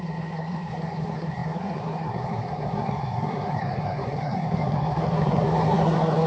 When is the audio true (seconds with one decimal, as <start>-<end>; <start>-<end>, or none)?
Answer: none